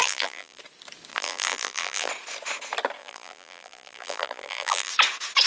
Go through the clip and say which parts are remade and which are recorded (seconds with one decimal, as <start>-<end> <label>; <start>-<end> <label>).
0.0-0.6 remade; 0.6-1.1 recorded; 1.1-2.1 remade; 2.1-3.0 recorded; 3.0-4.9 remade; 4.9-5.5 recorded